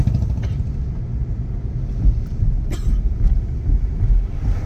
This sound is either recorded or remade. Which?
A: recorded